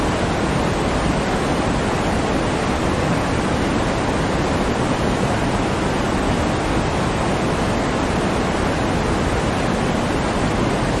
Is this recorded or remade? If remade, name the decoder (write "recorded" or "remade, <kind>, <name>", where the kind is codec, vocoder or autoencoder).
recorded